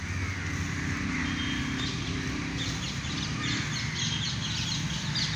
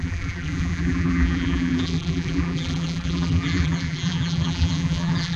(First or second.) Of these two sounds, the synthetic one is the second